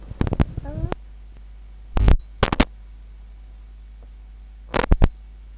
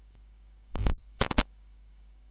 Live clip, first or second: first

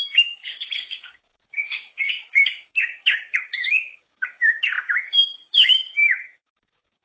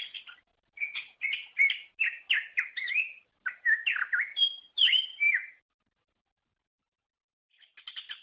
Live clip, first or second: second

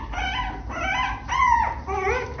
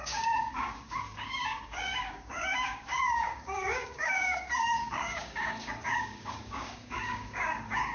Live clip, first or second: first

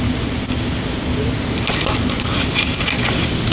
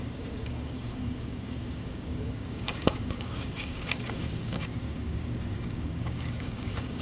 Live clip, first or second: first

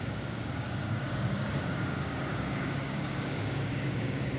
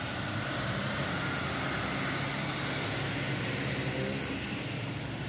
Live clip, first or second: second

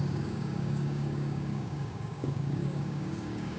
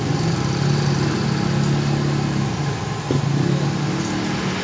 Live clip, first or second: second